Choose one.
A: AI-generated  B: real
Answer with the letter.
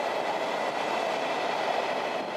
B